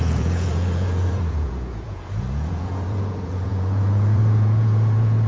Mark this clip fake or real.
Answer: fake